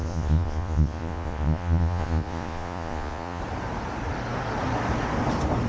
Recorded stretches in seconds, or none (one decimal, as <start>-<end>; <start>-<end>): 3.4-5.7